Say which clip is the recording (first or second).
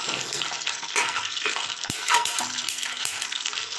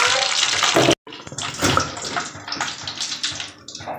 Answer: second